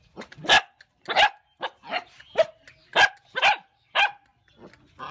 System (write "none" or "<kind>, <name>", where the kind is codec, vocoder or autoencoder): none